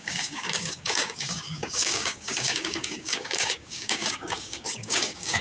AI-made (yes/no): yes